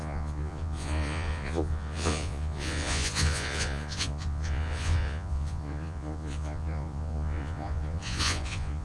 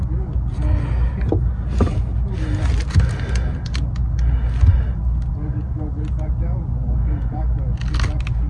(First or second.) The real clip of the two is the second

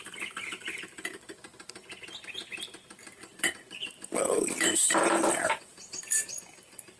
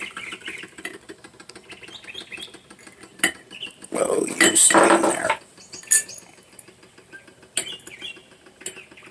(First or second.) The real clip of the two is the second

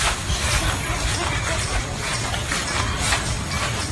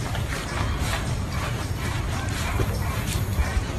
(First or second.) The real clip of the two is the first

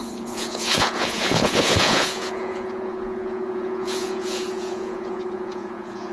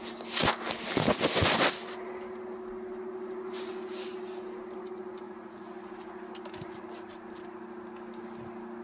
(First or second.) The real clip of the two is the second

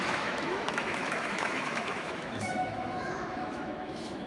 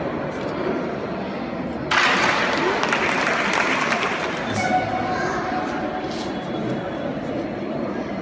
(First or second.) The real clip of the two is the second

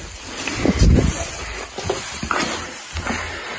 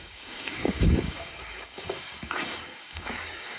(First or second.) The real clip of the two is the first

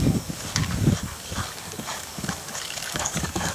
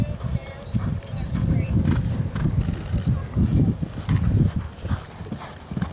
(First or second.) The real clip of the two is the second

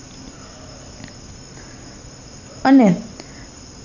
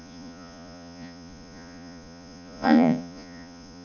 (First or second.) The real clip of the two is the first